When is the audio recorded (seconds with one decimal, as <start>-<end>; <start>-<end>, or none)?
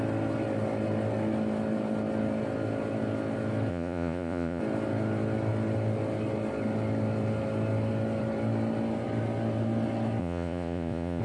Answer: 0.0-3.7; 4.6-10.2